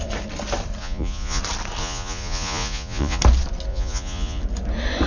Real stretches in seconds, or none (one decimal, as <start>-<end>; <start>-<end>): 0.0-0.8; 1.4-1.8; 3.2-3.7; 4.4-5.1